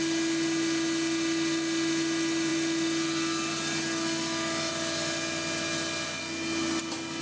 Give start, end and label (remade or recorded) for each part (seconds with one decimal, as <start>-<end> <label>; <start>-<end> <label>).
0.0-7.2 recorded